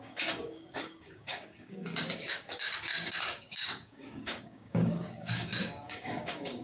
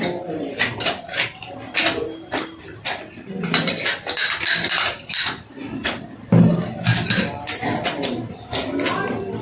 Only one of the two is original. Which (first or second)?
second